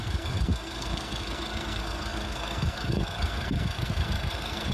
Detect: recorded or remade remade